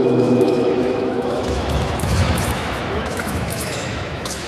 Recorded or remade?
remade